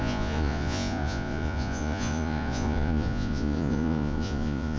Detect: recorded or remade remade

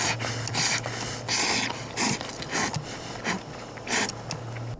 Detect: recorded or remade recorded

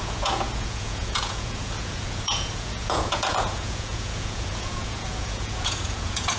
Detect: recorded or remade remade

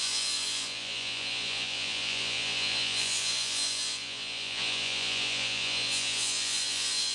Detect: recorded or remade remade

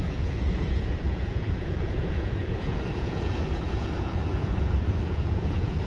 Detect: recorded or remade remade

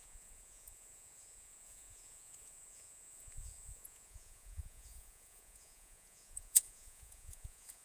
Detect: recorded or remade remade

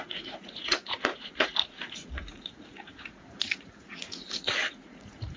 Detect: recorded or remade remade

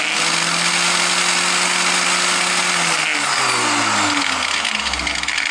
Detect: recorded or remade recorded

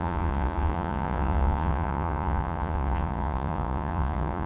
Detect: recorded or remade remade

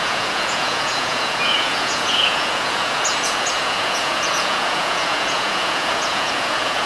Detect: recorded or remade remade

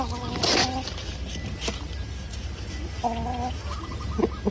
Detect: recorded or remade recorded